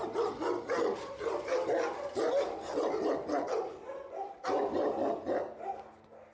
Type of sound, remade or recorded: recorded